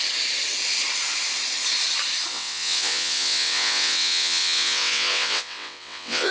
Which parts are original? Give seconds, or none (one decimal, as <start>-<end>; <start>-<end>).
0.0-2.3